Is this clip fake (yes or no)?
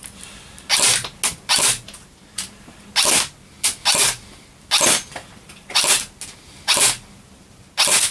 no